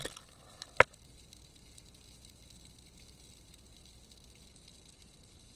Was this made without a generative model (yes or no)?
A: no